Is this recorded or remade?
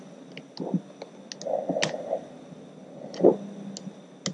recorded